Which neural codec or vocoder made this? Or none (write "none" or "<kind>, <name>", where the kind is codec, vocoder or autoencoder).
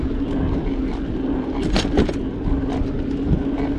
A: none